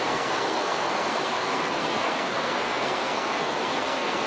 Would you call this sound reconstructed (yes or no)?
yes